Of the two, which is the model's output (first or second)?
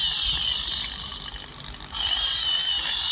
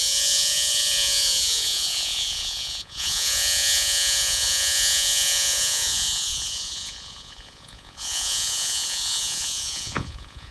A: second